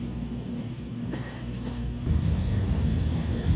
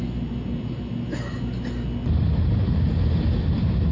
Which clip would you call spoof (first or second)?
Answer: first